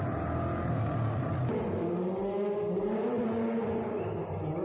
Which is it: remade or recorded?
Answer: recorded